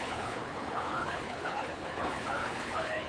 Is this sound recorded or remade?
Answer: remade